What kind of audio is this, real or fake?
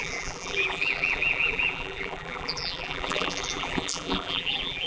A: fake